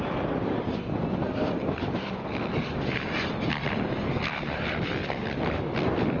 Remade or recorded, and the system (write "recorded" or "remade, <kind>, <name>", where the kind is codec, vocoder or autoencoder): recorded